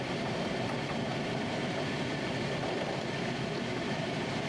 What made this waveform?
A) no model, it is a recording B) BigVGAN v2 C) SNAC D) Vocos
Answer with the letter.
B